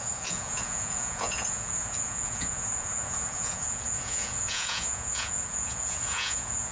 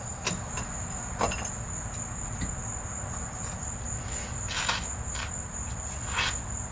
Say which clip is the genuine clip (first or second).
second